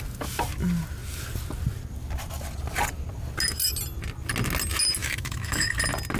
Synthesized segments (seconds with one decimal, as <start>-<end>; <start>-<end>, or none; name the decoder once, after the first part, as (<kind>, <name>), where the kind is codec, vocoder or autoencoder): 5.0-5.7 (autoencoder, DAC-VAE)